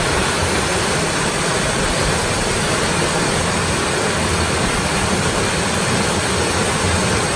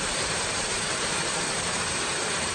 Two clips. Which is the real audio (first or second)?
first